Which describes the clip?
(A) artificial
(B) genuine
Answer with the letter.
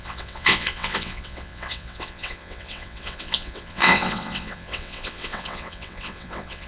A